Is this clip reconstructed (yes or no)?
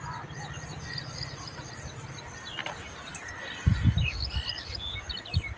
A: no